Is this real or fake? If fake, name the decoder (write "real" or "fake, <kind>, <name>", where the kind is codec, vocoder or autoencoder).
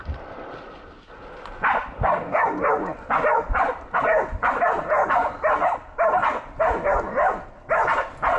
real